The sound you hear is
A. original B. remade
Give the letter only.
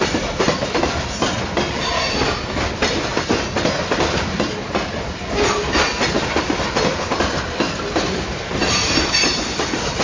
A